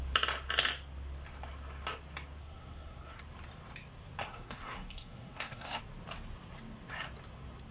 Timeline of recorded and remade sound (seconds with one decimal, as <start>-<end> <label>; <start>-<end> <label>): 0.0-2.4 recorded; 2.4-3.2 remade; 3.2-4.2 recorded; 4.2-5.8 remade; 5.8-7.7 recorded